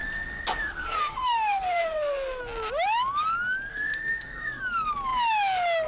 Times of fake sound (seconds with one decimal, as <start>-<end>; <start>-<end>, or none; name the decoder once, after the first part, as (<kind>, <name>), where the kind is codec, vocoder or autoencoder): 0.0-2.4 (codec, SNAC); 3.7-4.6